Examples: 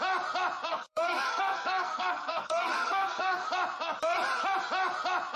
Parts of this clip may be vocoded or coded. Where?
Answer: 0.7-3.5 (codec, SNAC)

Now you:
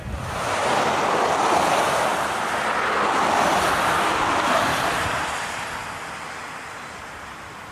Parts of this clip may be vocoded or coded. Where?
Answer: 0.0-2.1 (vocoder, BigVGAN v2); 4.8-5.8; 6.8-7.7